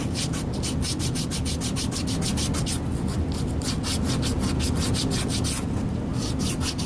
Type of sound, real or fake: real